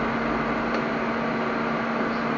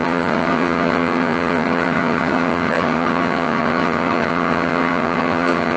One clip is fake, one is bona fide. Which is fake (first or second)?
second